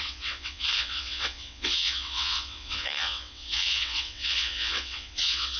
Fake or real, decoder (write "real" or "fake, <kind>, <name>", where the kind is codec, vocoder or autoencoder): fake, vocoder, WaveNeXt